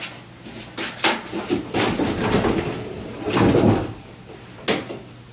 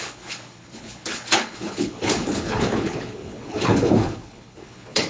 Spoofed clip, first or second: second